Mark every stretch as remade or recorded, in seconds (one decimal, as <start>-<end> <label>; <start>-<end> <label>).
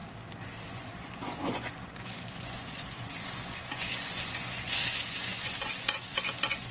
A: 0.0-0.7 recorded; 0.7-6.7 remade